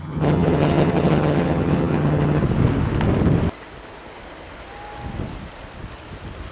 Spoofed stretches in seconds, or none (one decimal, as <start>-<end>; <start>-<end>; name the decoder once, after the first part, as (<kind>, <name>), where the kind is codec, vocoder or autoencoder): 0.0-2.4 (vocoder, HiFi-GAN)